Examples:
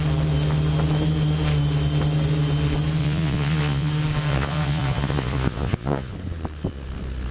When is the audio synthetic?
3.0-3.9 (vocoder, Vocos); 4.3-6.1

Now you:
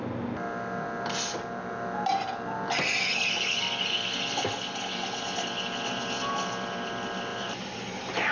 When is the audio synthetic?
7.3-7.8 (vocoder, BigVGAN v2)

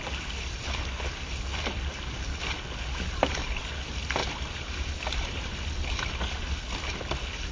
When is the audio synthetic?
none

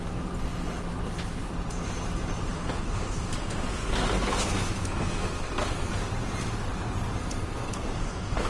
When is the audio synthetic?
2.5-5.9 (codec, SNAC); 7.2-8.5

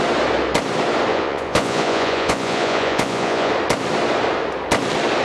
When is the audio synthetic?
1.1-3.5 (vocoder, Vocos)

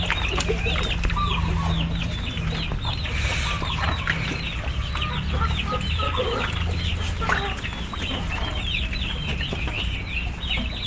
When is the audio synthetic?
none

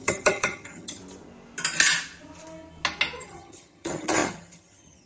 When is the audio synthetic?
0.0-1.0 (vocoder, HiFi-GAN); 3.2-5.1

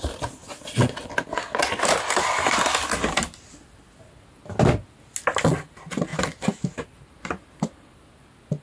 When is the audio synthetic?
6.1-7.3 (vocoder, BigVGAN v2)